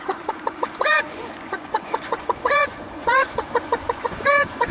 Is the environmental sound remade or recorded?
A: remade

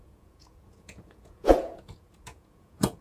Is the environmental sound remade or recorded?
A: remade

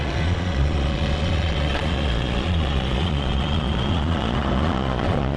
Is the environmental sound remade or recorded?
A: remade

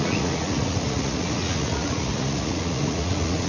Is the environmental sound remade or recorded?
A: remade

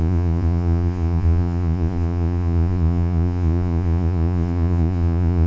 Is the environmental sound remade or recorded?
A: remade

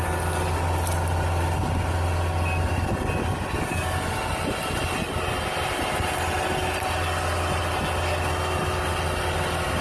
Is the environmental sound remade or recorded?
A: recorded